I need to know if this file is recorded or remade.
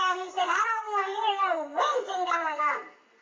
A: remade